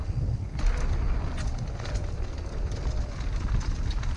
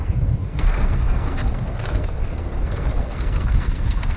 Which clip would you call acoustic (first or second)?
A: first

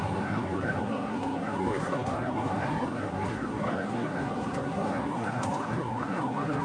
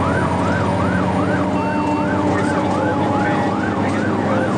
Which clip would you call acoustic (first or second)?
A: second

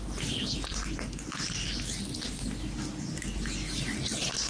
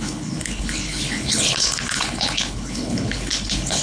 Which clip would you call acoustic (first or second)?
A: first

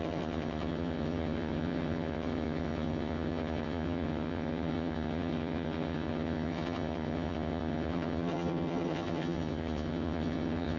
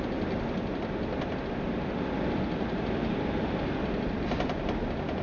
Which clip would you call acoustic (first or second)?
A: second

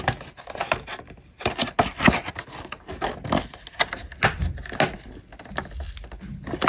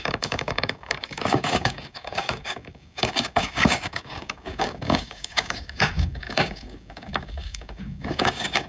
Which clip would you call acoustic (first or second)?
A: first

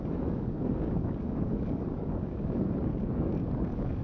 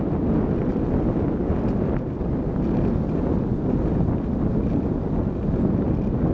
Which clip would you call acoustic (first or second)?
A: second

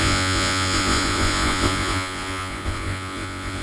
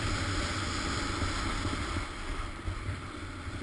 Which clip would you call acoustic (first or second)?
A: second